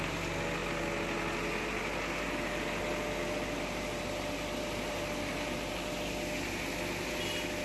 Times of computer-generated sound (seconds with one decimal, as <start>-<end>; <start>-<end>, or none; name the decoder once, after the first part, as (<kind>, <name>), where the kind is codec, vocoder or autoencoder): none